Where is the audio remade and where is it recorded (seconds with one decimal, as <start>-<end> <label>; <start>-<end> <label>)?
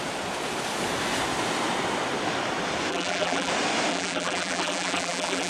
0.0-2.9 recorded; 2.9-3.5 remade; 3.5-3.9 recorded; 3.9-5.5 remade